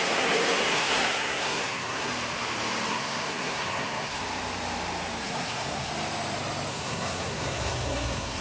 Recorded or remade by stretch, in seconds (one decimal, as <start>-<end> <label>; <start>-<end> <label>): 0.0-2.1 remade; 2.1-2.9 recorded; 2.9-4.2 remade; 4.2-5.2 recorded; 5.2-5.9 remade; 5.9-6.7 recorded; 6.7-8.4 remade